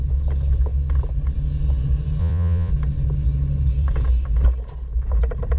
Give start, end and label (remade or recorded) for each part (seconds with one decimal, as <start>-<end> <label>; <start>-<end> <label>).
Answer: 0.0-2.2 recorded; 2.2-2.7 remade; 2.7-5.6 recorded